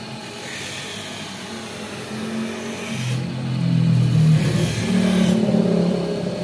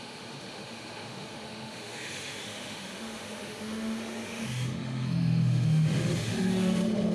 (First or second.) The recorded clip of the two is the first